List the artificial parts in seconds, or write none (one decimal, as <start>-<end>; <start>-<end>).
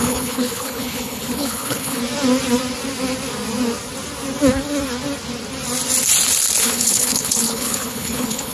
0.0-2.0; 6.6-8.5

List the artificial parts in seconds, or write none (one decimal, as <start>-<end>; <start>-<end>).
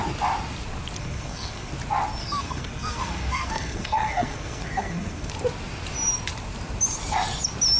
1.0-1.7; 2.2-5.3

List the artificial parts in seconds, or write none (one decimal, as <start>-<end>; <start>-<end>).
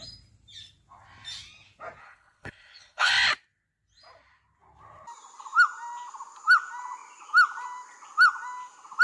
2.0-3.1